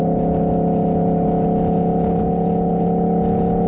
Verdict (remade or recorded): recorded